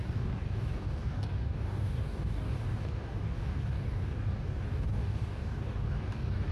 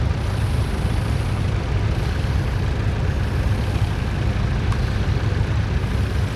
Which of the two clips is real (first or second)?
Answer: second